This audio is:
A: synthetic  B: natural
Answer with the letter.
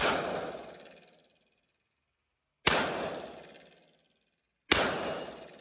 B